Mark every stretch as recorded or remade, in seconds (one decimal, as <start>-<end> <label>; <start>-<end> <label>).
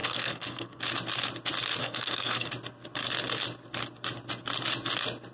0.0-0.8 remade; 0.8-1.8 recorded; 1.8-2.5 remade; 2.5-5.3 recorded